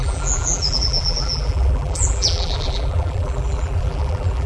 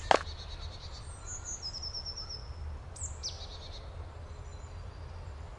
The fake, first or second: first